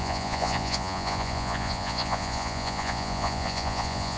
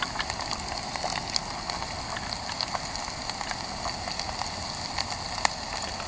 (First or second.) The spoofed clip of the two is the first